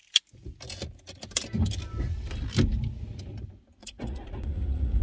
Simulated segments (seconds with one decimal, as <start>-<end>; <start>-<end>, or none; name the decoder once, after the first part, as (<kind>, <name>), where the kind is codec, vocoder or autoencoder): 3.8-5.0 (vocoder, Vocos)

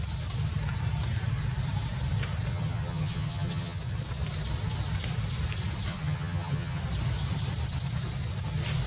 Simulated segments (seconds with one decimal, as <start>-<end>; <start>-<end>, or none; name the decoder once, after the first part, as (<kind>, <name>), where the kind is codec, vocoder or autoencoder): 2.5-3.8 (vocoder, HiFi-GAN); 5.9-6.8

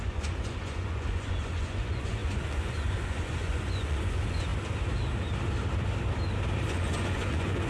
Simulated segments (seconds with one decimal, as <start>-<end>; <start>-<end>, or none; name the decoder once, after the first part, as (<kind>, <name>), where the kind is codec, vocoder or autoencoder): 0.0-4.5 (vocoder, Vocos); 6.7-7.7

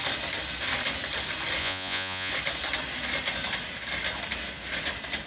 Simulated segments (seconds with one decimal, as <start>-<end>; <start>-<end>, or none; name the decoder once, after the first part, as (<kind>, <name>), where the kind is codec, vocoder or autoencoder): 1.6-2.3 (vocoder, Vocos)

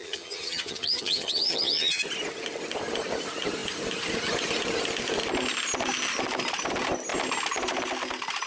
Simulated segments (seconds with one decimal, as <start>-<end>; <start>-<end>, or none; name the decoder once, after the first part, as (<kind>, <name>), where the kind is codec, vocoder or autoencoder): 0.0-2.0 (vocoder, HiFi-GAN)

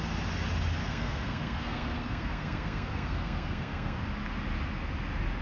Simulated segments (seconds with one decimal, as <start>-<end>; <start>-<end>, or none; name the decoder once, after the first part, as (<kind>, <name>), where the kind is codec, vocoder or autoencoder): 0.8-4.0 (codec, SNAC)